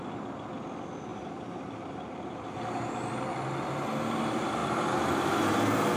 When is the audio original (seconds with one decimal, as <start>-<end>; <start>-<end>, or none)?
0.0-1.1; 3.1-6.0